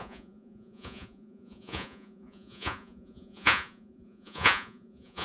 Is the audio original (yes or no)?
no